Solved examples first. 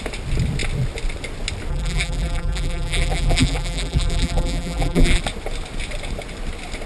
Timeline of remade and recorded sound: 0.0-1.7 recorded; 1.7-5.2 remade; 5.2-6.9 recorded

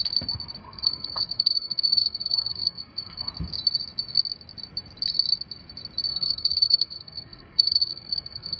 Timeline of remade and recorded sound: 0.0-0.6 recorded; 0.6-3.3 remade; 3.3-6.1 recorded; 6.1-8.6 remade

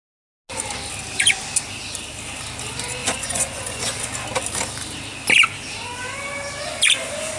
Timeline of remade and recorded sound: 0.0-3.0 recorded; 3.0-4.0 remade; 4.0-7.4 recorded

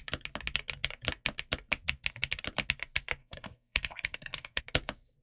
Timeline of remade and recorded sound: 0.0-3.2 recorded; 3.2-4.6 remade; 4.6-5.2 recorded

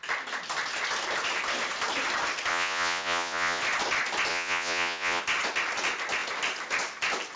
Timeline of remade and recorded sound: 0.0-2.5 recorded; 2.5-3.6 remade; 3.6-4.3 recorded; 4.3-5.2 remade; 5.2-7.4 recorded

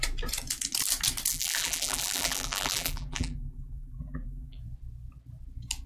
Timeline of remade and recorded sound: 0.0-1.3 recorded; 1.3-4.6 remade; 4.6-5.9 recorded

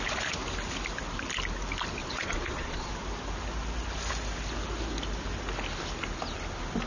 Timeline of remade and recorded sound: 0.0-2.0 recorded; 2.0-2.9 remade; 2.9-6.9 recorded

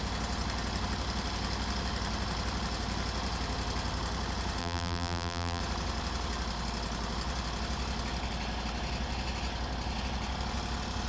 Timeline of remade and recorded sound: 0.0-4.6 recorded; 4.6-5.6 remade; 5.6-11.1 recorded